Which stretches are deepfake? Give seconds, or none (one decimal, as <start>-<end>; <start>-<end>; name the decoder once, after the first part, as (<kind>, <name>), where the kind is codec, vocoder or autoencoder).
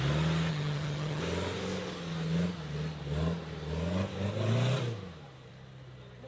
0.5-1.2 (vocoder, HiFi-GAN)